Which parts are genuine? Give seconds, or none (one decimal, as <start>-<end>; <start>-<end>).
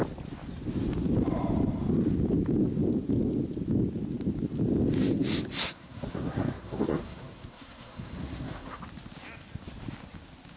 0.0-5.6; 8.8-10.6